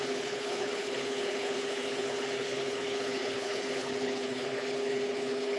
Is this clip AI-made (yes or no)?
yes